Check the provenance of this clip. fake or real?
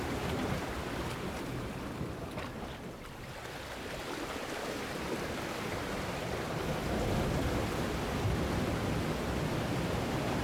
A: real